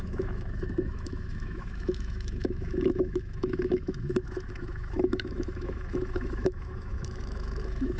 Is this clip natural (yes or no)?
no